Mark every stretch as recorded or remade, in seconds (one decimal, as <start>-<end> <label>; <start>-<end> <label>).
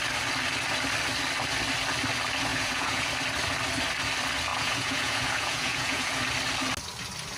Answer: 0.0-2.5 recorded; 2.5-3.1 remade; 3.1-4.5 recorded; 4.5-6.2 remade; 6.2-7.4 recorded